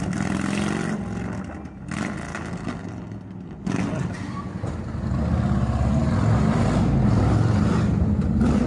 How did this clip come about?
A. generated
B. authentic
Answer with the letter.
B